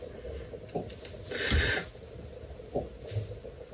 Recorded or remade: recorded